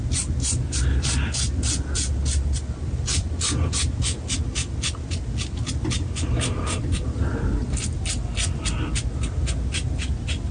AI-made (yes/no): no